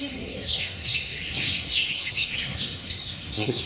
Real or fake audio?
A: fake